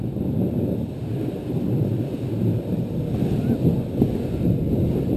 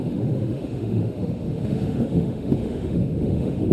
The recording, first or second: first